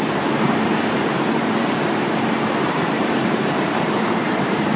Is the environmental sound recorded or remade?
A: remade